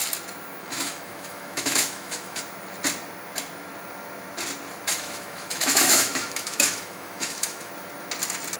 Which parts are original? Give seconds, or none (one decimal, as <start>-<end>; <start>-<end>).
0.0-0.6; 2.4-4.9; 7.7-8.6